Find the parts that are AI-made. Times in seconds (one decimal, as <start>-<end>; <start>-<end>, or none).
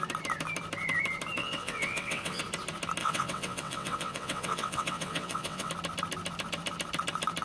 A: 1.4-2.4; 3.0-5.7